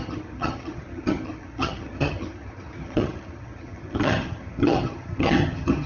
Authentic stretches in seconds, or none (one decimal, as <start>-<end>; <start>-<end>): none